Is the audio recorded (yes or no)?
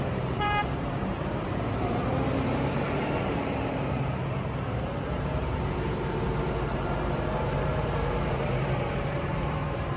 no